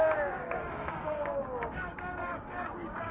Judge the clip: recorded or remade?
remade